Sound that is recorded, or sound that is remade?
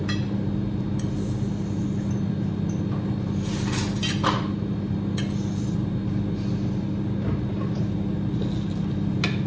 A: recorded